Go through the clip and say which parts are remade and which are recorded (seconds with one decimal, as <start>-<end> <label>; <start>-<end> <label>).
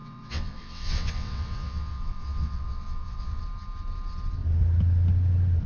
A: 0.0-3.4 remade; 3.4-5.7 recorded